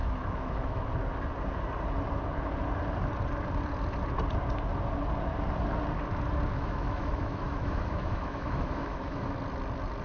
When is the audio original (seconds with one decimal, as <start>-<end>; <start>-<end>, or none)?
0.9-6.5; 9.3-10.0

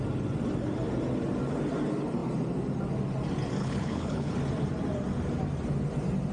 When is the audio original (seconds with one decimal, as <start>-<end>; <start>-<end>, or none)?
0.0-3.6; 4.3-6.3

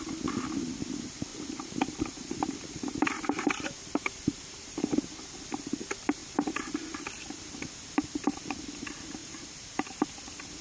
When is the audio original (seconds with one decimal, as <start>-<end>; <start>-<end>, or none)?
0.0-1.3; 5.3-6.2; 6.8-9.2; 10.1-10.6

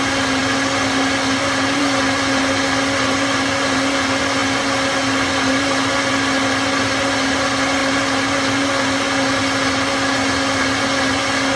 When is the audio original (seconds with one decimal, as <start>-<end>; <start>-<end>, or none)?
0.0-11.6

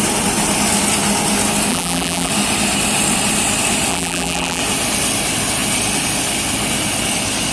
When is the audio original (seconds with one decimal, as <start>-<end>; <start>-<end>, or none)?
0.0-1.7; 2.3-3.9; 4.6-7.5

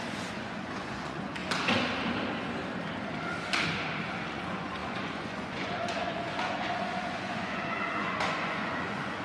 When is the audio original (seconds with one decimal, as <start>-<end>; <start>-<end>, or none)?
1.4-4.3

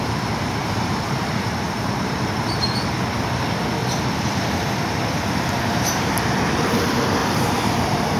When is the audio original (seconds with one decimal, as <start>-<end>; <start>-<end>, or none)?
0.0-0.6; 2.3-3.8; 6.4-7.2

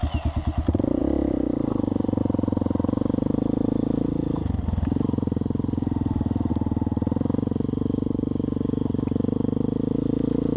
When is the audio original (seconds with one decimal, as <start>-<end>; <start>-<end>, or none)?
0.0-1.0; 2.2-10.6